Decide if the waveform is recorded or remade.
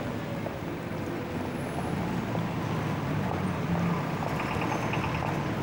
recorded